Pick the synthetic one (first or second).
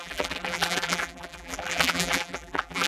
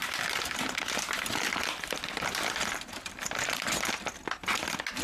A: first